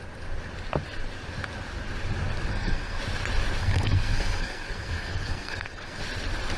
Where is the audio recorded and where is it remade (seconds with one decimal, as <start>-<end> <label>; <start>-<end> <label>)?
0.0-2.5 recorded; 2.5-3.0 remade; 3.0-3.6 recorded; 3.6-6.0 remade; 6.0-6.6 recorded